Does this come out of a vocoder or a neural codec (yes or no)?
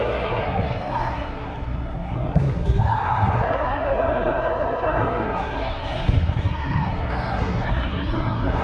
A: yes